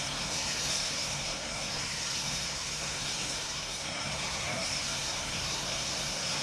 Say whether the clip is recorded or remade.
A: remade